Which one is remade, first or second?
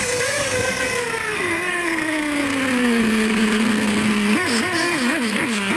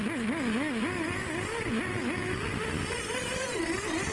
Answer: first